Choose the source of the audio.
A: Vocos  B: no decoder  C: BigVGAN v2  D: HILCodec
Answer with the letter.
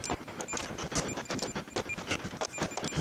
B